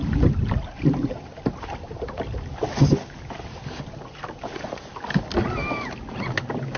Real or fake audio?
real